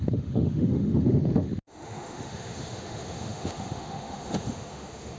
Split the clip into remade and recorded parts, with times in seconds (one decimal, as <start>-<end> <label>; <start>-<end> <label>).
0.0-5.2 remade